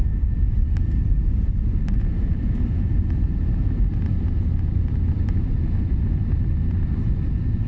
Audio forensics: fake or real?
fake